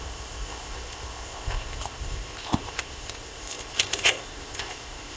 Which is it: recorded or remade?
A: remade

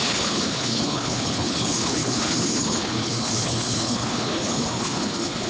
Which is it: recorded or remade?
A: remade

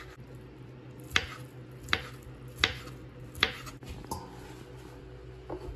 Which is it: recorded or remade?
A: recorded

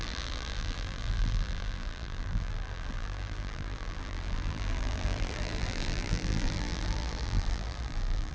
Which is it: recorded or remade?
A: remade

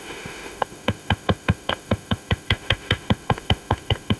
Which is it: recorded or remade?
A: remade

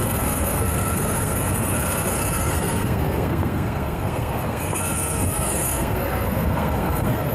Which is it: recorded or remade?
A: remade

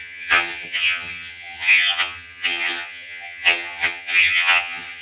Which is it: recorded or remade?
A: remade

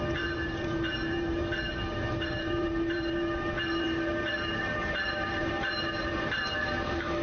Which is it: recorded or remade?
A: remade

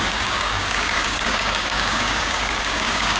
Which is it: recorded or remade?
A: remade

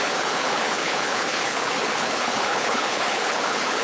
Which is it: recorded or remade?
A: remade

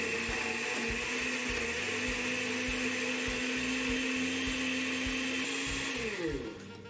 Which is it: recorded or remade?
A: recorded